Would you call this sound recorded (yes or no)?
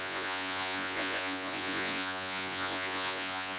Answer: no